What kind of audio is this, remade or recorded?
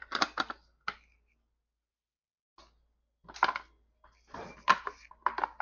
recorded